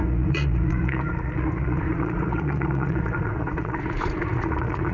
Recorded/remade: remade